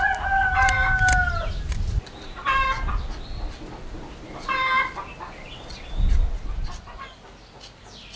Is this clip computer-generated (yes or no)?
no